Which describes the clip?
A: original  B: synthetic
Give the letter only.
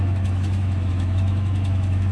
B